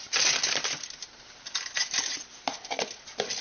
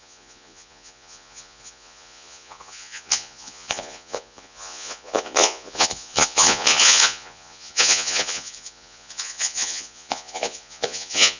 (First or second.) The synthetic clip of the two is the second